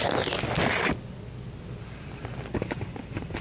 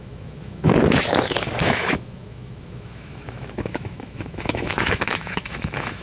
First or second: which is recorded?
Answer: first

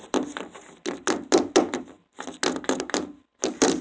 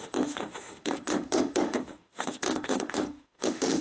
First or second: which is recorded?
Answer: first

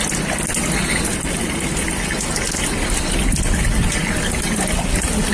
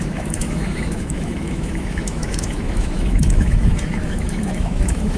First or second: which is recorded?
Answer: first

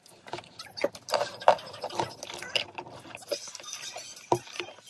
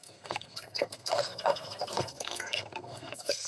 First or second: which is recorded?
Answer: first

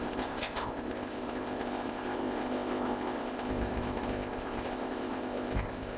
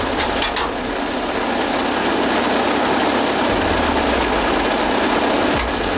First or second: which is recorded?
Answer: second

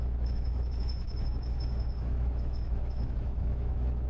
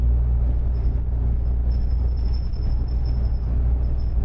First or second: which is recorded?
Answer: second